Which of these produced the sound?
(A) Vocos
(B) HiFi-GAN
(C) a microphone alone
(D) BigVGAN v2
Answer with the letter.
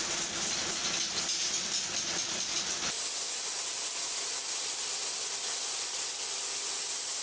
C